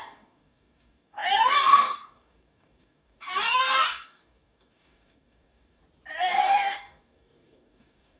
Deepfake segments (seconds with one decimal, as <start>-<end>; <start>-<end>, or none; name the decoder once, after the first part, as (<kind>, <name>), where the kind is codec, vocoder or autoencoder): 0.0-5.8 (codec, DAC); 6.4-8.2